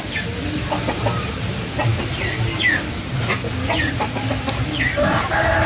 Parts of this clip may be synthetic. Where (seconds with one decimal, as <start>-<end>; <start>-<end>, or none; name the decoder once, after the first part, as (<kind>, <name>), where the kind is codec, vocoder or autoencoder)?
none